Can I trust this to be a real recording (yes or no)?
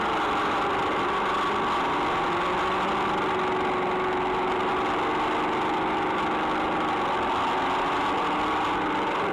yes